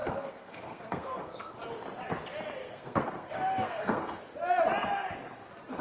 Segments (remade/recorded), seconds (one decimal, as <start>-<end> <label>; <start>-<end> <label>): 0.0-1.5 remade; 1.5-2.6 recorded; 2.6-4.2 remade; 4.2-5.8 recorded

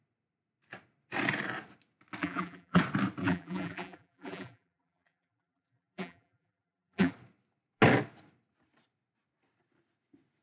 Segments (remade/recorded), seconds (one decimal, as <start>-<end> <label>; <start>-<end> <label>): 0.0-2.2 recorded; 2.2-2.8 remade; 2.8-3.2 recorded; 3.2-7.1 remade; 7.1-10.4 recorded

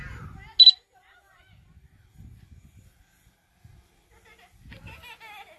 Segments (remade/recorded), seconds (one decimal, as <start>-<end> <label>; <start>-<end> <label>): 0.0-5.6 recorded